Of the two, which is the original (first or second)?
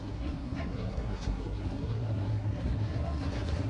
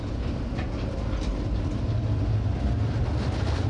second